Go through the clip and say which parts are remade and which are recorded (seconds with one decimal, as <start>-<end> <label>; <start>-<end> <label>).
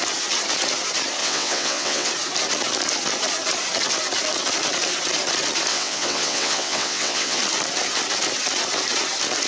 0.0-1.2 recorded; 1.2-2.1 remade; 2.1-5.7 recorded; 5.7-7.4 remade; 7.4-9.5 recorded